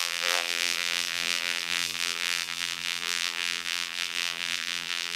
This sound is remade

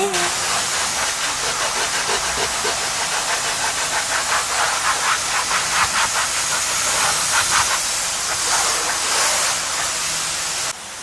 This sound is recorded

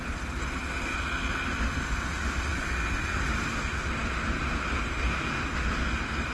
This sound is recorded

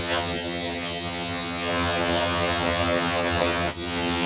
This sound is remade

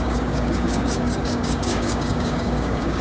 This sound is remade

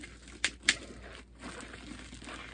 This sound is recorded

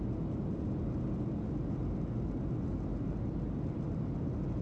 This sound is recorded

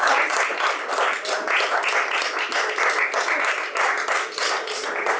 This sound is recorded